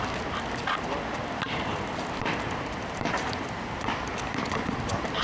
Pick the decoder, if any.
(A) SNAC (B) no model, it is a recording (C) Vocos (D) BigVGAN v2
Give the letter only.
D